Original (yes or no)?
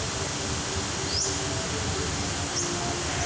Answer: yes